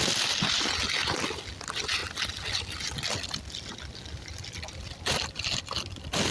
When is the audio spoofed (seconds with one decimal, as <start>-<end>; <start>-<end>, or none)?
none